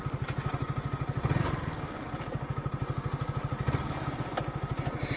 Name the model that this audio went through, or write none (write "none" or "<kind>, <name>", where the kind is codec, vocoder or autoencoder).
none